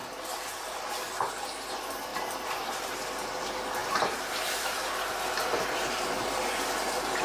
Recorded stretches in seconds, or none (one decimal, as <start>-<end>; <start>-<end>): 0.9-2.1; 3.0-3.8; 6.6-7.2